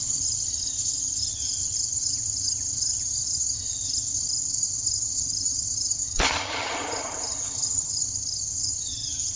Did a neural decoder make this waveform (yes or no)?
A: yes